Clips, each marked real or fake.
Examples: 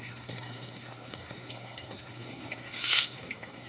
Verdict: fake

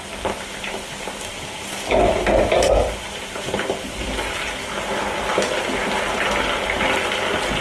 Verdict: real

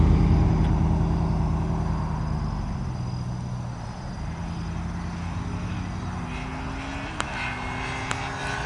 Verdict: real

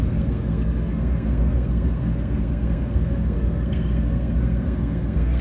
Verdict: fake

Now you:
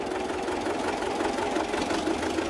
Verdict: real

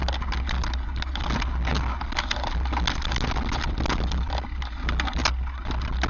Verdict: real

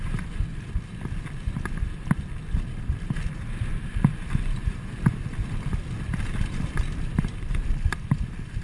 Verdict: real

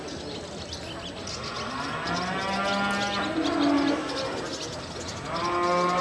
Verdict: real